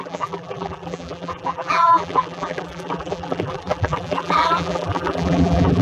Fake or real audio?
fake